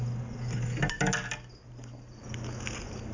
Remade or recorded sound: recorded